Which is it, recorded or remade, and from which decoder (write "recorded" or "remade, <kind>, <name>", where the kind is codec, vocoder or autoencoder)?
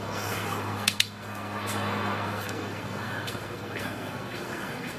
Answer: remade, codec, SNAC